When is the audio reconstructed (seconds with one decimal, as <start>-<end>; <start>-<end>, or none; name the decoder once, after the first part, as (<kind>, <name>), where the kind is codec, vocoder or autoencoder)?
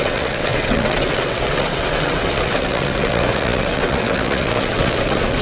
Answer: 0.0-5.4 (vocoder, WaveNeXt)